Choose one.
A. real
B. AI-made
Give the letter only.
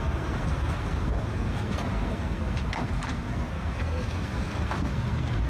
B